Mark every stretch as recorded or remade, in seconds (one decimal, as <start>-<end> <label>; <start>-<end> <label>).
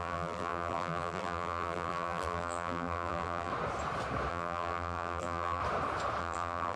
0.0-3.5 remade; 3.5-4.3 recorded; 4.3-5.6 remade; 5.6-6.2 recorded; 6.2-6.8 remade